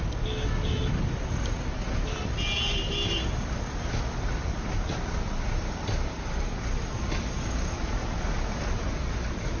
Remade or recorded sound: recorded